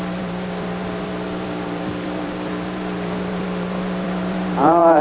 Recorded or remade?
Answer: remade